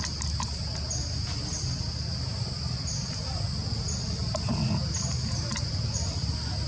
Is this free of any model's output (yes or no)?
yes